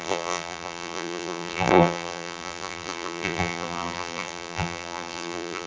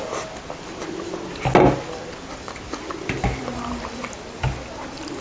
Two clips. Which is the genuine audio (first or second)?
second